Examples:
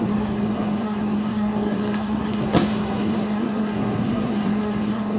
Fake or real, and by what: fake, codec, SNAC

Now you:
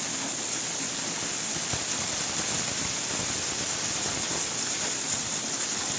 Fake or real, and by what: real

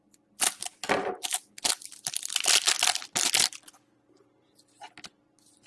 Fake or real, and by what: real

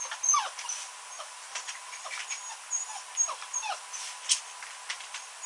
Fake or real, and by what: real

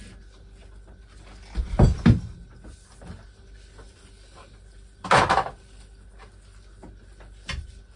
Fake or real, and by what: real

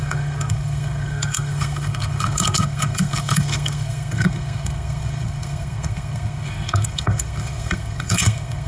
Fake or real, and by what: fake, codec, SNAC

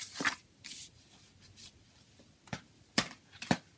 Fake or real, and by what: real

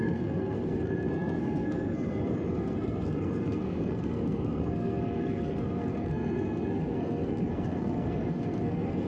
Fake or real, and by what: fake, codec, SNAC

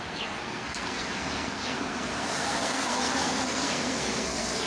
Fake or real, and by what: fake, codec, SNAC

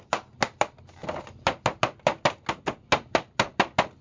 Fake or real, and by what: real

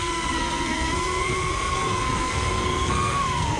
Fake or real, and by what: fake, codec, SNAC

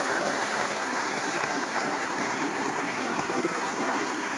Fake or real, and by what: fake, codec, SNAC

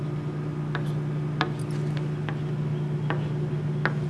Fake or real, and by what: real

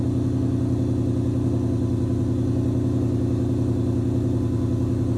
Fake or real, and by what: real